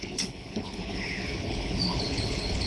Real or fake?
fake